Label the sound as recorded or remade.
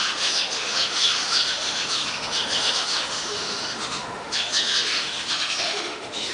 remade